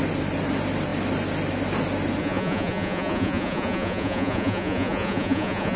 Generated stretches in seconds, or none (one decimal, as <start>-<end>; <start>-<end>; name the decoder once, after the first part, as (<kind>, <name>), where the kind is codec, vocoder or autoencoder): 2.2-5.8 (vocoder, Vocos)